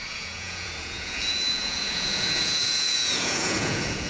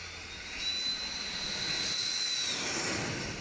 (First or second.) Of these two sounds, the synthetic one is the first